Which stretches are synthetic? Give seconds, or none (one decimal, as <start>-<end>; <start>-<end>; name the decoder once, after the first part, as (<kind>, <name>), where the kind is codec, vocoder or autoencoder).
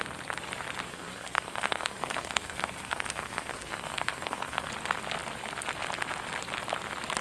0.9-4.7 (codec, SNAC)